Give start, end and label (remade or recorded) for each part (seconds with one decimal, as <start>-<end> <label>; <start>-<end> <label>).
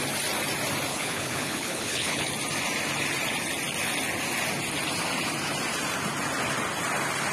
0.0-0.9 recorded; 0.9-2.3 remade; 2.3-7.3 recorded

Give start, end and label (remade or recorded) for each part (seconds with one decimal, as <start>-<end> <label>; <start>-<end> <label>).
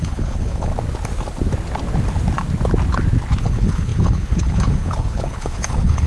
0.0-0.7 remade; 0.7-3.4 recorded; 3.4-6.1 remade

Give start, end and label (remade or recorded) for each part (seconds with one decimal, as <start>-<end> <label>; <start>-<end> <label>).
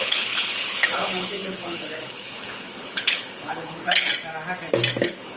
0.0-4.1 remade; 4.1-5.0 recorded; 5.0-5.4 remade